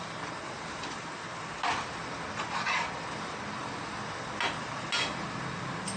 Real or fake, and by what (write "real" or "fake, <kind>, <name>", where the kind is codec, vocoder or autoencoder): real